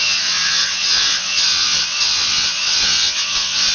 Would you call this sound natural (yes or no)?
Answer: no